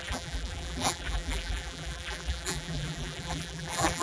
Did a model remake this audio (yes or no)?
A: yes